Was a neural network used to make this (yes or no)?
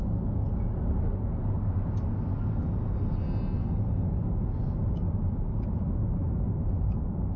no